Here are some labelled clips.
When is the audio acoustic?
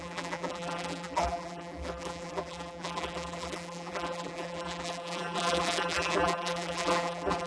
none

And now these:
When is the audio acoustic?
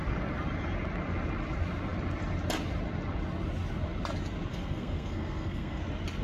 0.0-4.5; 5.8-6.2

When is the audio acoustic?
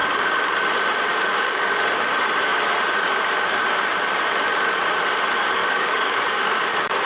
0.6-1.1; 1.8-5.6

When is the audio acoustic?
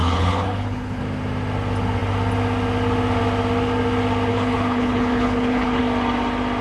1.0-4.3; 5.8-6.6